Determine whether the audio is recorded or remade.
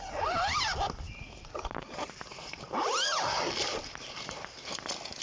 recorded